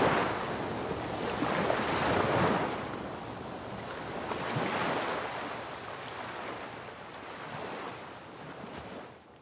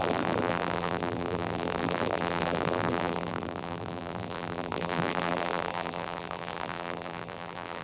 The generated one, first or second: second